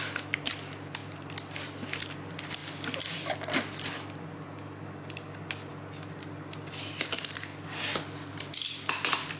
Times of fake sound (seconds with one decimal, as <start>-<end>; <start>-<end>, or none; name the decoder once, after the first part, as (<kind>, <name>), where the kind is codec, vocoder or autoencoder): none